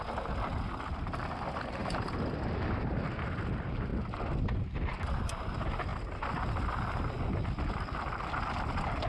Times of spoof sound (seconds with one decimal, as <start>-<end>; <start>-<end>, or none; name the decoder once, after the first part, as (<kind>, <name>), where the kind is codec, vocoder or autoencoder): none

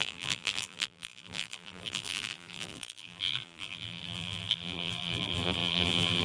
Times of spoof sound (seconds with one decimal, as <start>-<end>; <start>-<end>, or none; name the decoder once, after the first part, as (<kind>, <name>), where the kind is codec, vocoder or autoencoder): 0.0-6.2 (vocoder, BigVGAN v2)

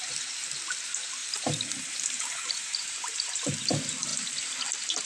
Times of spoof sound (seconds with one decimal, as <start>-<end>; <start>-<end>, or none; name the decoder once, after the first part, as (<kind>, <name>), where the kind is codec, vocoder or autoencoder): 1.2-3.3 (vocoder, BigVGAN v2)

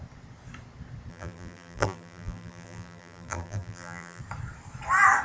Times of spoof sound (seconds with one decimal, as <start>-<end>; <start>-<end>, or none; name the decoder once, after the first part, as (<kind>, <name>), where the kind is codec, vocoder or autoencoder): 1.1-4.2 (vocoder, BigVGAN v2)

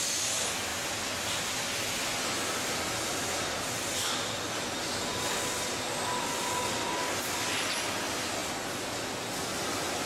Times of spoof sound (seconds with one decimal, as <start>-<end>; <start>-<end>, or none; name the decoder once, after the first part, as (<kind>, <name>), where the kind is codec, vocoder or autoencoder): none

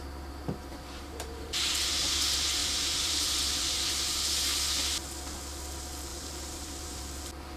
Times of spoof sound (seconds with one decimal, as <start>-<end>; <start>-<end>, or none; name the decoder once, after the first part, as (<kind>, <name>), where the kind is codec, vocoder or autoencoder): 0.7-2.0 (vocoder, BigVGAN v2); 2.6-3.9; 6.1-7.0